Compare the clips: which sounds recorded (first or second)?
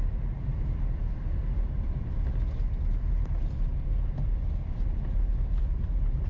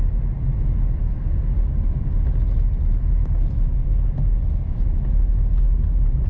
second